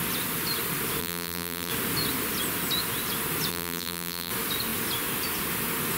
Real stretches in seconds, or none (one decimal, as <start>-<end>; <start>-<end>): 0.0-1.0; 1.7-3.5; 4.3-6.0